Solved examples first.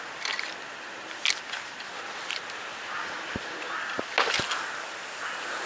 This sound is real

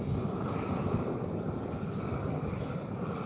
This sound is fake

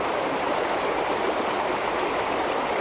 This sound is fake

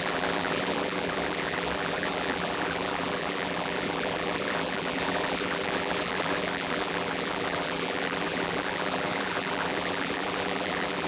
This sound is fake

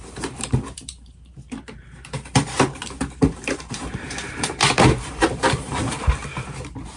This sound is fake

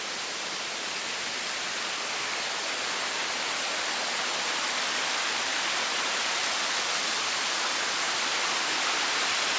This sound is real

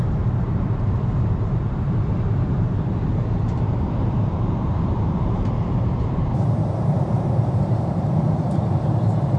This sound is fake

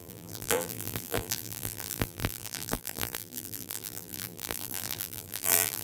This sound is fake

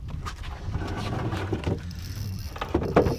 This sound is real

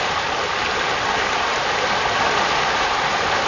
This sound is fake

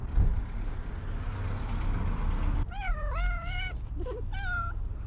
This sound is fake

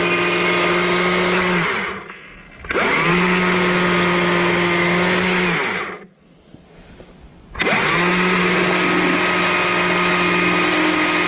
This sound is real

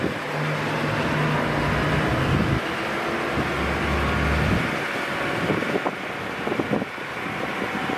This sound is real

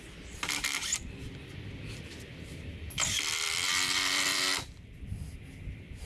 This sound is fake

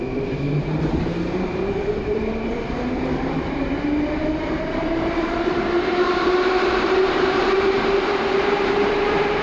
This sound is fake